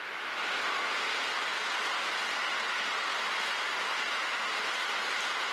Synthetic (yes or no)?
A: no